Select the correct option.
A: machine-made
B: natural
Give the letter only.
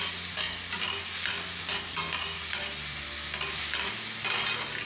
B